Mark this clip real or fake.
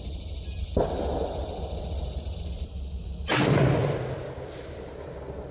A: real